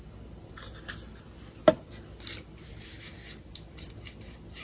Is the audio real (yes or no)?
yes